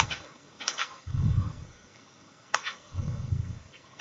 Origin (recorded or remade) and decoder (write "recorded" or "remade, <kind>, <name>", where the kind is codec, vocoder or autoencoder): remade, codec, SNAC